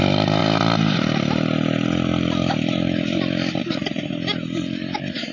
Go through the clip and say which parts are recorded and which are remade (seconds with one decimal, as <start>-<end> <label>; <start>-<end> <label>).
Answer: 0.0-5.3 recorded